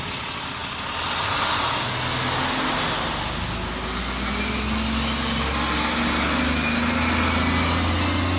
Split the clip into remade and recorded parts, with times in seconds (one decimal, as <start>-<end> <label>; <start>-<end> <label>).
0.0-8.4 recorded